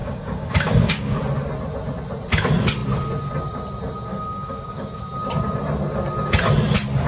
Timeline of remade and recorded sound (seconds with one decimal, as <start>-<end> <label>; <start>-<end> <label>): 0.0-1.2 remade; 1.2-4.1 recorded; 4.1-5.0 remade; 5.0-7.1 recorded